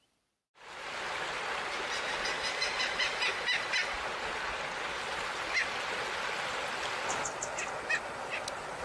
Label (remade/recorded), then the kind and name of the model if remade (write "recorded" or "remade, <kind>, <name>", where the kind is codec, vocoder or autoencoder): recorded